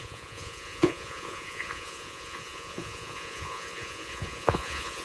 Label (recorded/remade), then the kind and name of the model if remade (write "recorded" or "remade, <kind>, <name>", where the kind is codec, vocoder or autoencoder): remade, vocoder, Vocos